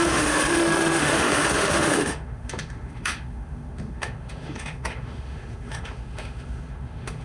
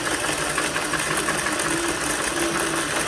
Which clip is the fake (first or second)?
first